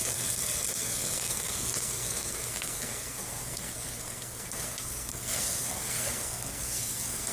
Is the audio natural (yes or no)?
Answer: no